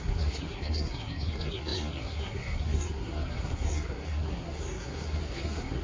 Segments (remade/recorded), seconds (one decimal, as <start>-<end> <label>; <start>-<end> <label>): 0.0-5.8 remade